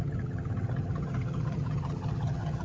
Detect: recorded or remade remade